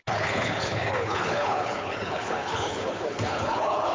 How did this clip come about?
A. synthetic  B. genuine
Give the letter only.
A